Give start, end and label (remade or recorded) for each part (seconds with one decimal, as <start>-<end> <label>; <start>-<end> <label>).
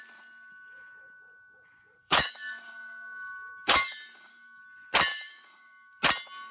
0.0-2.0 recorded; 2.0-4.6 remade; 4.6-5.1 recorded; 5.1-6.0 remade; 6.0-6.5 recorded